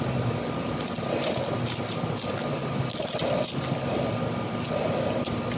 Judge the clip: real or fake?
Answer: real